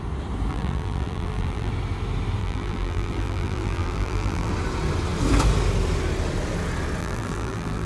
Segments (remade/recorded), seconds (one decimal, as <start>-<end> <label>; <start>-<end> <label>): 0.0-0.5 recorded; 0.5-1.7 remade; 1.7-2.4 recorded; 2.4-4.5 remade; 4.5-7.0 recorded; 7.0-7.9 remade